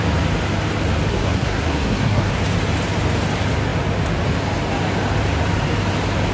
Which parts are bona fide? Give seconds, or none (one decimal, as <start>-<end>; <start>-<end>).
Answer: 0.0-1.1; 2.4-6.3

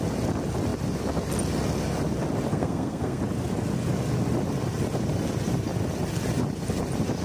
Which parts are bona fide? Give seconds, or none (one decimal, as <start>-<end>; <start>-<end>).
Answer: 0.0-2.5; 3.2-7.2